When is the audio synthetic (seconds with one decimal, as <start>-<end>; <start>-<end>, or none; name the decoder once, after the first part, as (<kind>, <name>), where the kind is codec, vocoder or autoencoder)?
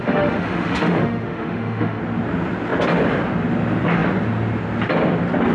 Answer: 0.0-2.0 (autoencoder, DAC-VAE)